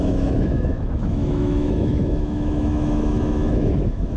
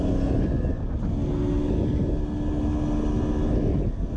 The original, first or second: second